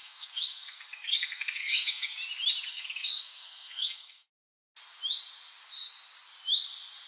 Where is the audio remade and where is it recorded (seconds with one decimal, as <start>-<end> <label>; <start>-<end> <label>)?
0.0-2.2 remade; 2.2-2.7 recorded; 2.7-4.6 remade; 4.6-7.1 recorded